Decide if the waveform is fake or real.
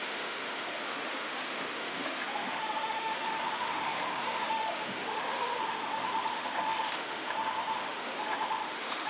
fake